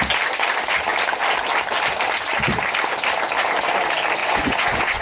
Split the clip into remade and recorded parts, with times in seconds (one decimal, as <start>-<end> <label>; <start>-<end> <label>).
0.0-4.2 recorded; 4.2-5.0 remade